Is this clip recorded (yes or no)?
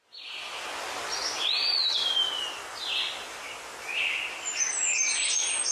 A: yes